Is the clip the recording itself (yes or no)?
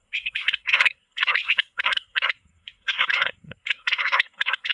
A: no